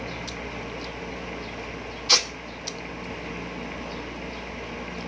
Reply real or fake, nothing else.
real